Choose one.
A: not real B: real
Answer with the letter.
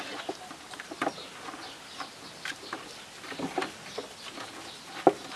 B